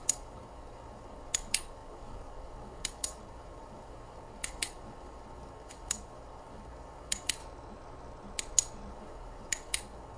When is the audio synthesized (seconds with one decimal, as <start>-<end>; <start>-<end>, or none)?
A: 0.0-7.4; 8.9-10.2